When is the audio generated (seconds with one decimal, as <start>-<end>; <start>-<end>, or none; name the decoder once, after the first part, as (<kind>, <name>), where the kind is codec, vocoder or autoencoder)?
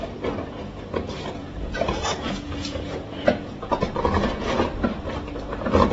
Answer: 1.4-3.7 (vocoder, Vocos)